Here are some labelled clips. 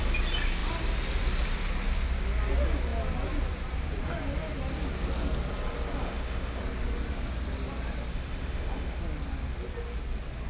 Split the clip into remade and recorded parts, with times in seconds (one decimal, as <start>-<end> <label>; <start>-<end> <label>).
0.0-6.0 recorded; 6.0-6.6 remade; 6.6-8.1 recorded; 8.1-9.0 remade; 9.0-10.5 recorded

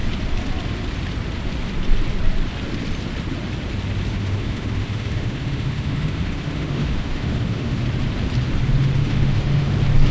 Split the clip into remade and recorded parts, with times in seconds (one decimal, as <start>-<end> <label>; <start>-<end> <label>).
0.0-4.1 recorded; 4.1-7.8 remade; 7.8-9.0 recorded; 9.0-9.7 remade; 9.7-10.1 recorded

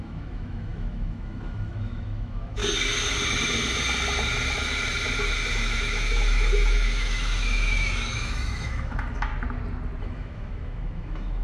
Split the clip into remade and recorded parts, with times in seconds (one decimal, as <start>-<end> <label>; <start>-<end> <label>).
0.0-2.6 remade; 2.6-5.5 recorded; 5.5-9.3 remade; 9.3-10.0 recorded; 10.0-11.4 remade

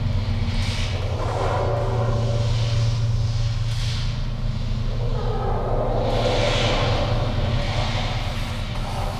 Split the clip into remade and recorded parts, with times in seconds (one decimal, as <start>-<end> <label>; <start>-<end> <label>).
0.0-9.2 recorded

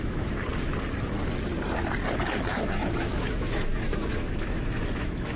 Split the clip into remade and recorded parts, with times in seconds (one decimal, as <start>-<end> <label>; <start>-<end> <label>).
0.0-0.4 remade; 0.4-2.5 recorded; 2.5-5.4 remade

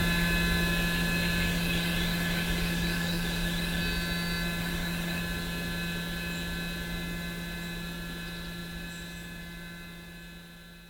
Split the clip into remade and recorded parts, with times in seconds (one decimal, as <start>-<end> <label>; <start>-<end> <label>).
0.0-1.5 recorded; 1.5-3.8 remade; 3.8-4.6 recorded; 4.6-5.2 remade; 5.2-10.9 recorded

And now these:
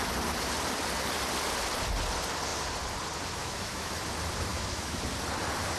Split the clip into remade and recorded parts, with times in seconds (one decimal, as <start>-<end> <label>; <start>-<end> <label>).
0.0-3.4 recorded; 3.4-4.0 remade; 4.0-4.5 recorded; 4.5-5.0 remade; 5.0-5.8 recorded